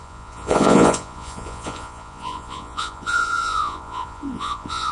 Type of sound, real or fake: fake